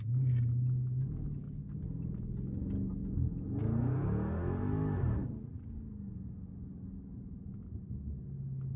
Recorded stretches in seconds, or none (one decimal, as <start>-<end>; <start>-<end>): 0.0-5.2; 5.7-8.8